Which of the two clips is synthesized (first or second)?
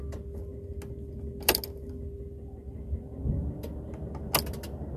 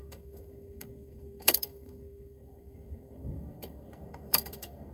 second